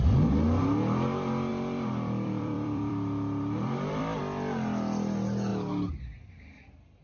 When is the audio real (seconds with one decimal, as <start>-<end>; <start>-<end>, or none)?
0.0-1.5; 4.2-7.0